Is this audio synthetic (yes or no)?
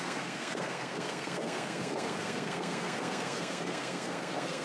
yes